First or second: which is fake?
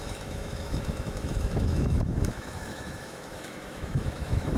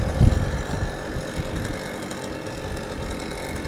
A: first